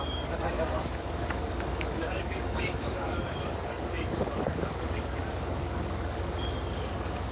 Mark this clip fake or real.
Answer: fake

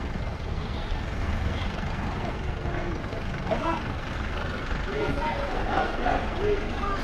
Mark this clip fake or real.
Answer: fake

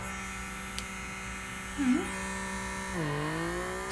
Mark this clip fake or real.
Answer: real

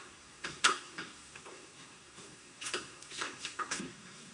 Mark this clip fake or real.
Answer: fake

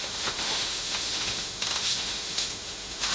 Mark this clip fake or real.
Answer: fake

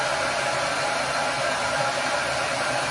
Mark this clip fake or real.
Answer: real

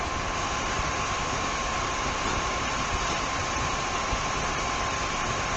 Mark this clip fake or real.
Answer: fake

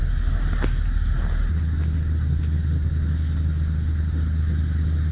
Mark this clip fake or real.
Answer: real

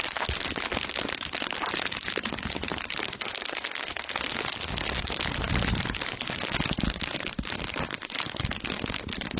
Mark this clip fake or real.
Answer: real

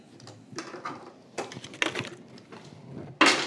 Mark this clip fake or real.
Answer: real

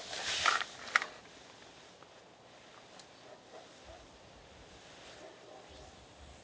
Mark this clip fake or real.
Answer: real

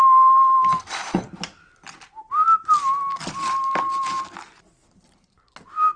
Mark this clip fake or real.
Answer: real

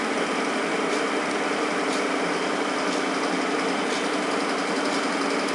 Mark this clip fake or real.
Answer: real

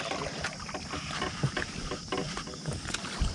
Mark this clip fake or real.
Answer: real